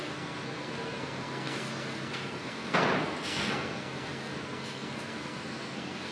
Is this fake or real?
fake